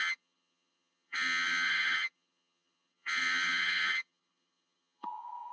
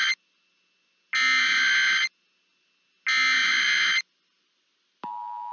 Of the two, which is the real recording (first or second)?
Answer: second